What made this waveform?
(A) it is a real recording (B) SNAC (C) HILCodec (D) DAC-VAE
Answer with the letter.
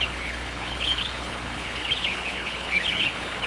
C